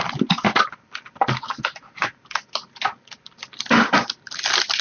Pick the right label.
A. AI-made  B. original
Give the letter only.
B